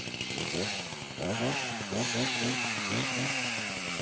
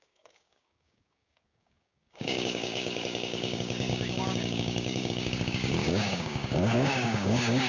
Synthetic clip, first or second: second